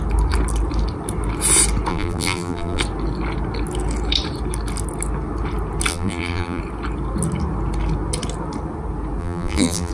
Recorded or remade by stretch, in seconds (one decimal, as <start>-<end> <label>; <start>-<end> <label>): 0.0-1.9 recorded; 1.9-2.8 remade; 2.8-5.9 recorded; 5.9-6.6 remade; 6.6-9.2 recorded; 9.2-9.9 remade